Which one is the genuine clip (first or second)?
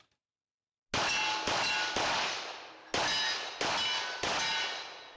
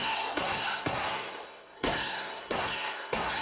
first